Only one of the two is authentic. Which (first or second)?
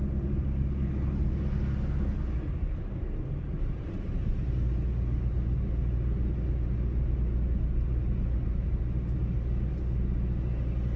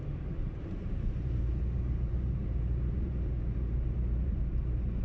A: first